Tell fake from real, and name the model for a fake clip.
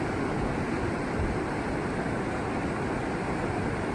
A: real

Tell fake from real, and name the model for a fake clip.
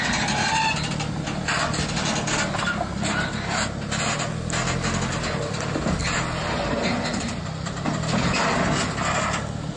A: real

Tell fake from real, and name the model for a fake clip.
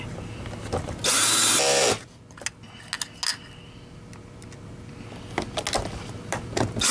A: real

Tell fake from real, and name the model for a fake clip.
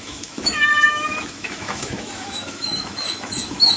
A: fake, autoencoder, DAC-VAE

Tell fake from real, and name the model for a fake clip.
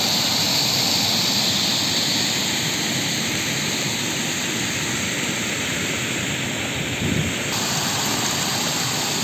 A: real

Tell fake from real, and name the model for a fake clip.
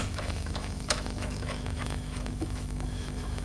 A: fake, autoencoder, DAC-VAE